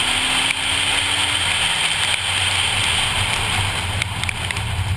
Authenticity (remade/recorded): recorded